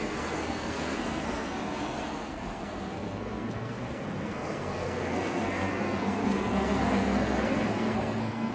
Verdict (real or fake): fake